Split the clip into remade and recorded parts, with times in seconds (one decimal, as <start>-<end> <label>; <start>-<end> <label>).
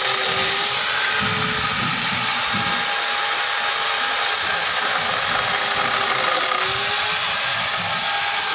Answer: 0.0-8.5 recorded